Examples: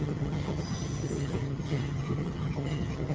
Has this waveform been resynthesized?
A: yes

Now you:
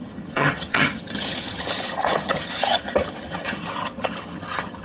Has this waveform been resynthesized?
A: yes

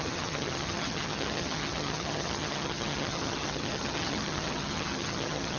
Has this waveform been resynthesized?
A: yes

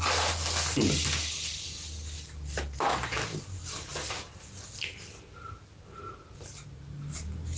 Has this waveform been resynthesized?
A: no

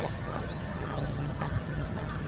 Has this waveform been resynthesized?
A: yes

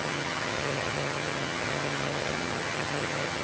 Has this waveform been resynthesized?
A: yes